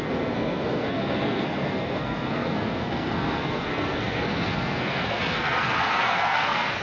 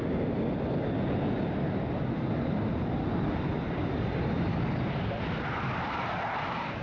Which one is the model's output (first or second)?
first